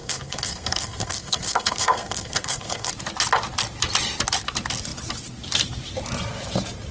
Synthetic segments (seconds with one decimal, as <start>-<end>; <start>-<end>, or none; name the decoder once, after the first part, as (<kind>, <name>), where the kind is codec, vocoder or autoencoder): 0.0-2.9 (codec, SNAC)